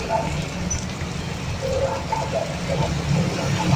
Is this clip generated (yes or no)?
no